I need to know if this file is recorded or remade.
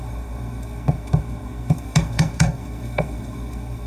remade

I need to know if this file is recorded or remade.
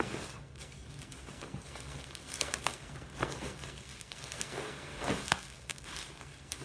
remade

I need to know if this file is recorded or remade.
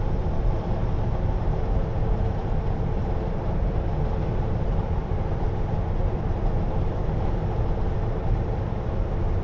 recorded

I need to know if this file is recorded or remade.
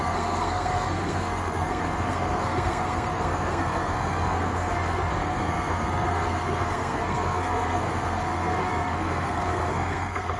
remade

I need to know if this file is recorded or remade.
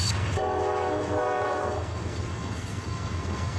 remade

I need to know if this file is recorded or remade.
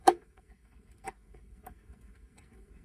remade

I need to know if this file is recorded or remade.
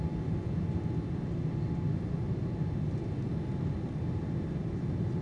recorded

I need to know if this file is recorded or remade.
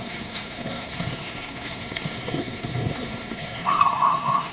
remade